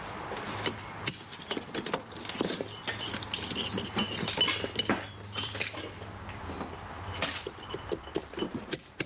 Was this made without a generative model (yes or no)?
no